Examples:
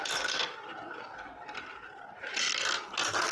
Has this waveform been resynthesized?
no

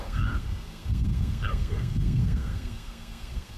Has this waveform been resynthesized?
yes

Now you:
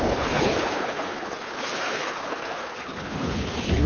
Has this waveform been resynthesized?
yes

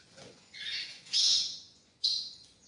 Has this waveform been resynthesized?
yes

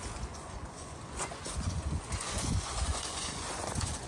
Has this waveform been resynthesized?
yes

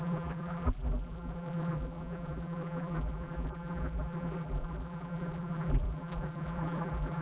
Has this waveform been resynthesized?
yes